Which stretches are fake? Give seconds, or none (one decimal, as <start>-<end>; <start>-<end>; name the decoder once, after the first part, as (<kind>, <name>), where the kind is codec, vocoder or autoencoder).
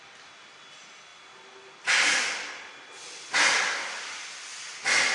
none